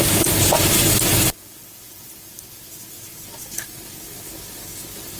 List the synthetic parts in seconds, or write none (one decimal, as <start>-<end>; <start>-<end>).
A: none